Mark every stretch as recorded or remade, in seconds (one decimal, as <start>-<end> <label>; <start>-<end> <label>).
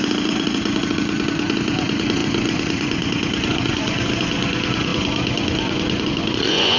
0.0-6.8 remade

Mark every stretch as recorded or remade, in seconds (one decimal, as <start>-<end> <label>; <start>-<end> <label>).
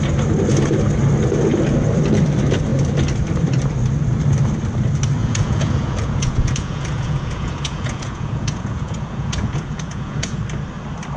0.0-5.2 recorded; 5.2-10.4 remade; 10.4-11.2 recorded